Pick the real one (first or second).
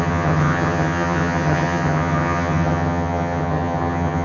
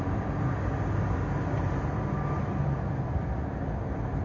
second